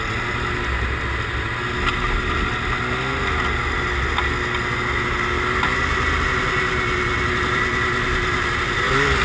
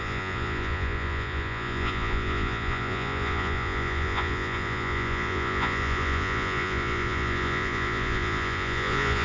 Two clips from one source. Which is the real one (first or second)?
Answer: first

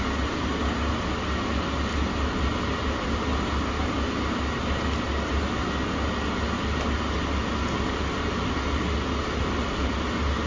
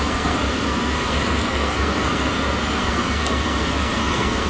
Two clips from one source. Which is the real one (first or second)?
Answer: first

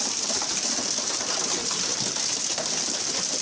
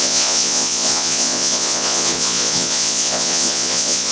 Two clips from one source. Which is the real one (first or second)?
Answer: first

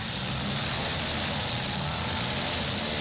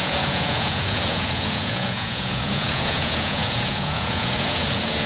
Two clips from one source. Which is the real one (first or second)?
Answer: first